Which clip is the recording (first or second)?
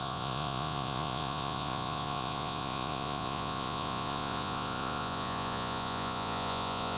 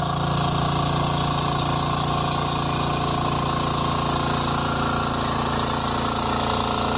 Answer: second